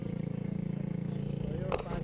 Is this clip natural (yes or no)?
yes